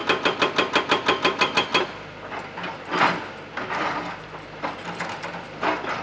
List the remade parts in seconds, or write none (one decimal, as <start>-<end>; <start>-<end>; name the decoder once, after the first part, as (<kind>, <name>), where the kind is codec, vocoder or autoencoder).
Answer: none